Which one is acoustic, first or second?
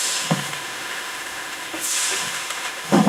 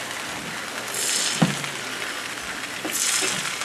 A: second